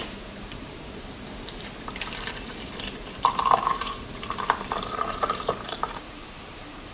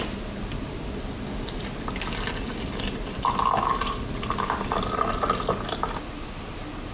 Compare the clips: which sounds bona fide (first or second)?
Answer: second